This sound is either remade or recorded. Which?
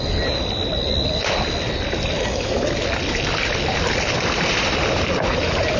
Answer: recorded